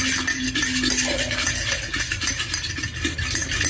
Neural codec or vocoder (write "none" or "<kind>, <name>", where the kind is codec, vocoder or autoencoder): none